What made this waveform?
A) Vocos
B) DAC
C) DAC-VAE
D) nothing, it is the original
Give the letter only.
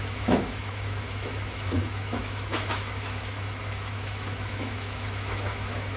C